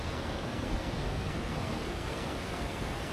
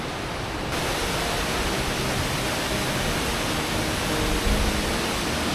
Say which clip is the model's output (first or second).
first